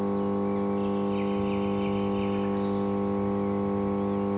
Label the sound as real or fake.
real